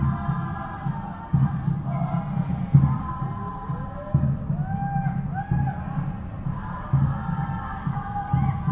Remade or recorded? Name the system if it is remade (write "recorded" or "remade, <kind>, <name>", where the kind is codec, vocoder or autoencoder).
recorded